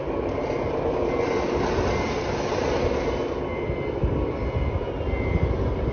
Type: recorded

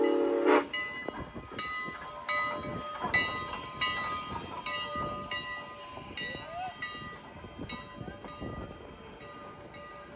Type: recorded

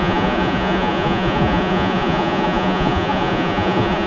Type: remade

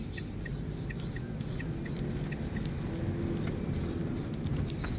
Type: recorded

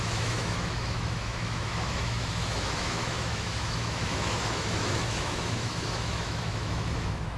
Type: remade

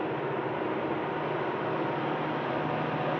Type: recorded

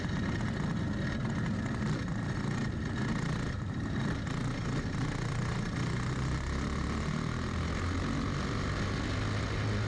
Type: recorded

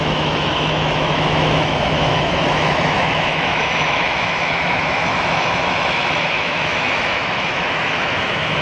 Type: remade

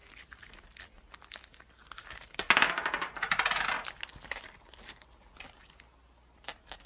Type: recorded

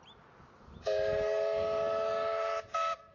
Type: recorded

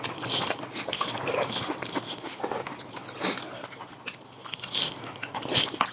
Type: recorded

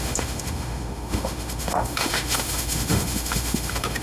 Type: remade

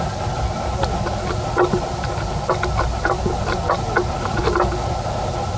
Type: recorded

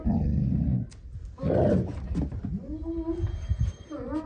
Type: recorded